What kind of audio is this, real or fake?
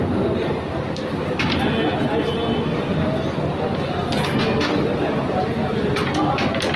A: real